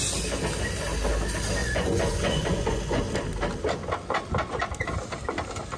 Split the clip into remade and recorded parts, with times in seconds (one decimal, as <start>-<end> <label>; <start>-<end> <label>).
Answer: 0.0-1.6 recorded; 1.6-3.0 remade; 3.0-5.8 recorded